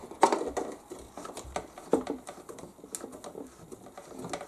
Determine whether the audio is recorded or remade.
recorded